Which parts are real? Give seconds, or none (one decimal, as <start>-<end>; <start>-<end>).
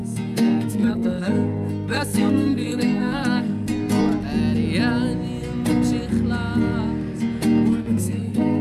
4.0-7.7